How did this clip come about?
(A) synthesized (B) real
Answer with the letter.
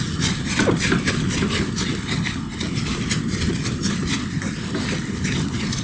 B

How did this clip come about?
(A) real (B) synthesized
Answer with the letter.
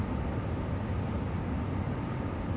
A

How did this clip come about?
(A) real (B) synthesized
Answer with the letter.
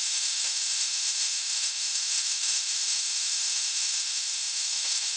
B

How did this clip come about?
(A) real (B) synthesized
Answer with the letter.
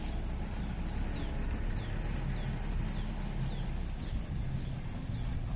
A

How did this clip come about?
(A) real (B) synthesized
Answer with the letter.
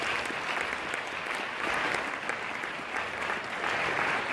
A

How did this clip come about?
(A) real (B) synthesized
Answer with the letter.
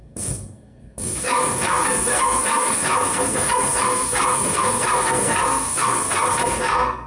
B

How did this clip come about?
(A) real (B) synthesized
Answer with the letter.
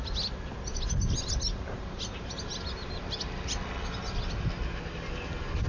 A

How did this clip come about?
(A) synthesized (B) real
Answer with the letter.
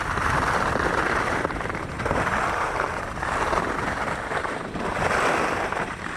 A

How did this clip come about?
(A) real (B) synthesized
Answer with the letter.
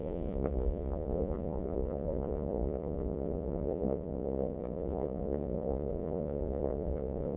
B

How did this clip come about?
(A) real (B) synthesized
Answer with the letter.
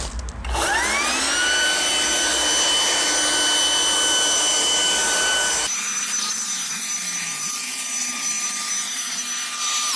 A